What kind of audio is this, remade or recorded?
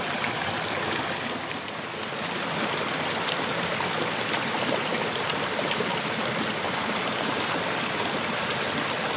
recorded